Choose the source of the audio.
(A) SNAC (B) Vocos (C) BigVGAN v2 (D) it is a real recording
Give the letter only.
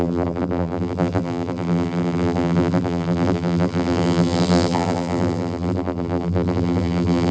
C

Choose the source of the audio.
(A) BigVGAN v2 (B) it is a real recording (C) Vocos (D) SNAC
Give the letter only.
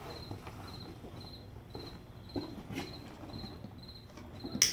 B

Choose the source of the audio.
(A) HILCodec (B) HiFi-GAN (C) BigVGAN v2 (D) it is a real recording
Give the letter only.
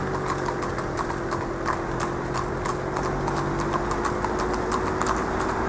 D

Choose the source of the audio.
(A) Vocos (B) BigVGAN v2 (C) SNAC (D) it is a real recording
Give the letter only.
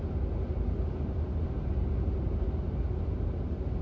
D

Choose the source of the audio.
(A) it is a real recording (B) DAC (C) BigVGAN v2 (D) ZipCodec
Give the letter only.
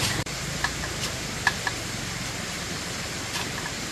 C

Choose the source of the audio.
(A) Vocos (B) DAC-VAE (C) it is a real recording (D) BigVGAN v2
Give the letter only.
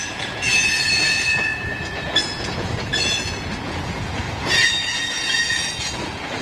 A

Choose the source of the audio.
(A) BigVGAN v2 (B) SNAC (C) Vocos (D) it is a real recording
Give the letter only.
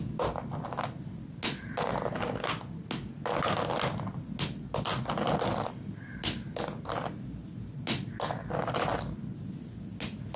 D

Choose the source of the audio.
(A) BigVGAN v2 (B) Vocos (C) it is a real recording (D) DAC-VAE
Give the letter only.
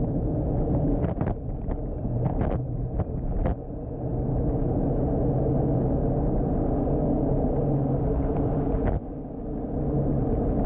C